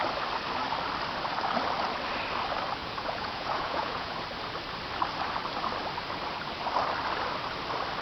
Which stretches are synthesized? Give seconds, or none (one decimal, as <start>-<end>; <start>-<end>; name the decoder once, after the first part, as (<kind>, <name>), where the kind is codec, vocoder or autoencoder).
2.8-4.1 (vocoder, Vocos)